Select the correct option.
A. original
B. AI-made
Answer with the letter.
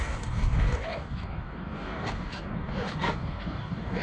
B